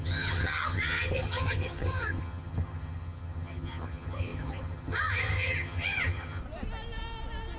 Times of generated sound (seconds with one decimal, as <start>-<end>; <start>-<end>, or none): 0.0-6.4